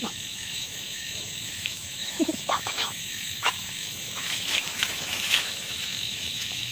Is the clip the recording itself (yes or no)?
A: no